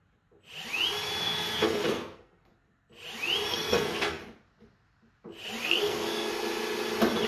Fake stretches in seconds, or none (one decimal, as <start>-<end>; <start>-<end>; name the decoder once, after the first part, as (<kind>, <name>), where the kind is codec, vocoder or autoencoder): 1.2-2.5 (codec, SNAC); 3.5-4.2; 5.6-6.3